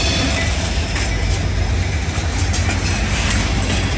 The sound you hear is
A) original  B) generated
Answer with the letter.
A